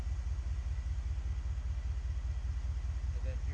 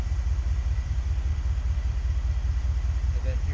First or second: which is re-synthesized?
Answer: second